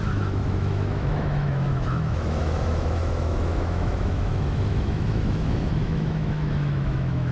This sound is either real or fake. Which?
fake